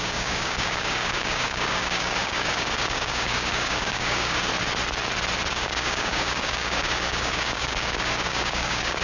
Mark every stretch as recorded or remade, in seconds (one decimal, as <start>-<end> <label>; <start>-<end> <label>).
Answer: 0.0-4.5 remade; 4.5-5.5 recorded; 5.5-9.0 remade